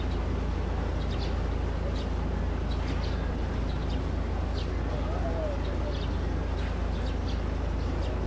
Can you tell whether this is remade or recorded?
recorded